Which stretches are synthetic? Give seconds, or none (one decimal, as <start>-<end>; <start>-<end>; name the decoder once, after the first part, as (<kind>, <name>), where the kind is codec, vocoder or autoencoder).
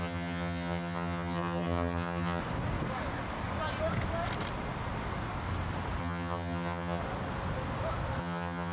0.0-2.4 (vocoder, HiFi-GAN); 6.0-7.0; 8.2-8.7